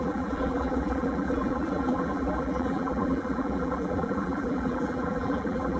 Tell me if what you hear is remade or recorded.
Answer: remade